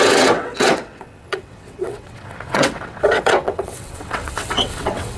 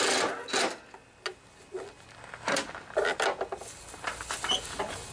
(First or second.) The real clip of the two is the second